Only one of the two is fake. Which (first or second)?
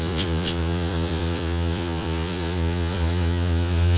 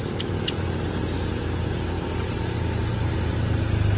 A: first